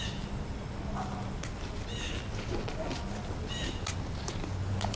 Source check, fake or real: real